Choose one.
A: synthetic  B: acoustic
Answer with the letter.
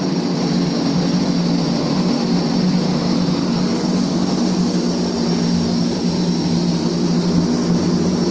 B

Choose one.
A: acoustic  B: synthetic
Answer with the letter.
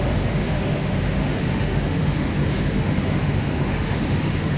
B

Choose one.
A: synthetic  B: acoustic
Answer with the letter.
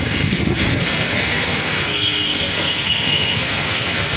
A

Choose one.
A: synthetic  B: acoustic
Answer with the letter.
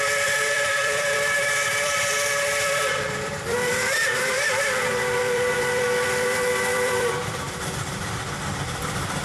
A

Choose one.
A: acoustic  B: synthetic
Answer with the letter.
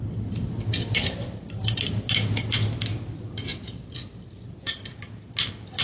A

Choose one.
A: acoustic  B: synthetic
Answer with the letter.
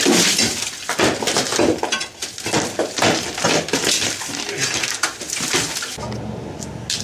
A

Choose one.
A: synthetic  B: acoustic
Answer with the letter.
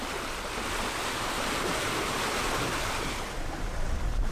B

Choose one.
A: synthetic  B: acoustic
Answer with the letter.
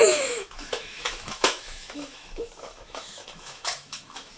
A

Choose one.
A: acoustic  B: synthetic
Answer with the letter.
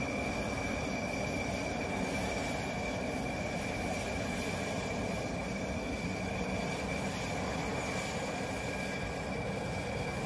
A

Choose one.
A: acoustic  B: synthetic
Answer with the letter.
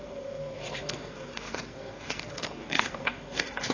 B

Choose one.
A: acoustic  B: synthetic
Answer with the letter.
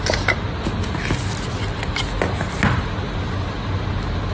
A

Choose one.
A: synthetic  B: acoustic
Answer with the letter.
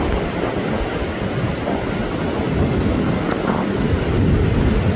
B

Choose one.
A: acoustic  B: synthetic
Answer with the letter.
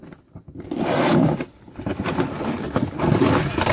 A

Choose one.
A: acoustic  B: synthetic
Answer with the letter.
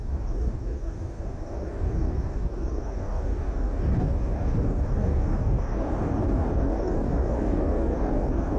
B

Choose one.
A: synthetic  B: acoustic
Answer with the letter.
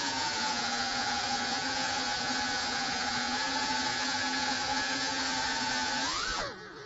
A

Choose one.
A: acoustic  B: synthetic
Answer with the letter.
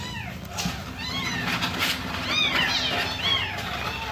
A